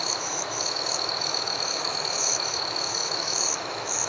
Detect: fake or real fake